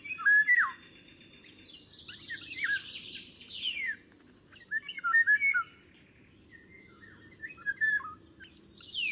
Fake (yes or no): no